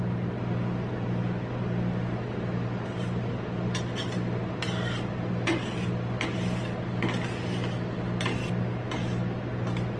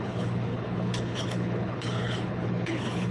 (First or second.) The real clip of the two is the first